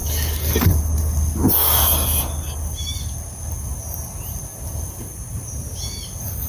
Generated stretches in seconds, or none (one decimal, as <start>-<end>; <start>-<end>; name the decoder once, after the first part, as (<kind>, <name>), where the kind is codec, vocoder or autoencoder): 4.5-5.4 (vocoder, BigVGAN v2)